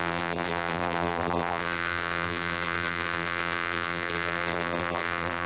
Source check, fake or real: fake